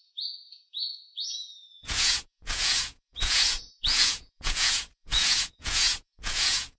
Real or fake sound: fake